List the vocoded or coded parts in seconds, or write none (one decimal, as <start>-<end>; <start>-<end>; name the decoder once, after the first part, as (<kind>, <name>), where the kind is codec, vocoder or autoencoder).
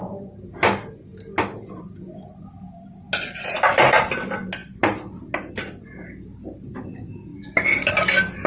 none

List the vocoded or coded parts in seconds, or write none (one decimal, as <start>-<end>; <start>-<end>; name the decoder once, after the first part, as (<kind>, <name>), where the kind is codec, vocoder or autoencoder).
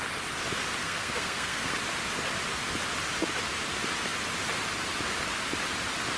0.8-1.7 (codec, SNAC)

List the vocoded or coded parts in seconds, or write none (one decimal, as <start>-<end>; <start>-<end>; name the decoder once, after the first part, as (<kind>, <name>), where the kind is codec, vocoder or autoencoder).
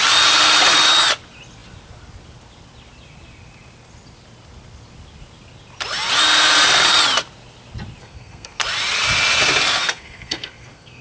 8.0-8.6 (codec, SNAC); 9.8-11.0